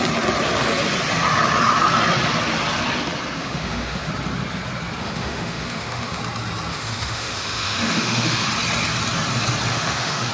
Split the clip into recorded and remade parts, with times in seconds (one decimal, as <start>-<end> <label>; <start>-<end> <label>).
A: 0.0-3.4 recorded; 3.4-4.1 remade; 4.1-5.0 recorded; 5.0-6.2 remade; 6.2-6.7 recorded; 6.7-8.5 remade; 8.5-9.7 recorded; 9.7-10.3 remade